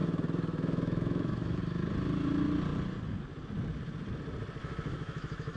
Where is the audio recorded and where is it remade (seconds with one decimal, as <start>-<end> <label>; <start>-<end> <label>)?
0.0-1.6 remade; 1.6-4.6 recorded; 4.6-5.6 remade